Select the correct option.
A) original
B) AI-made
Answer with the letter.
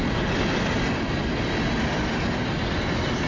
A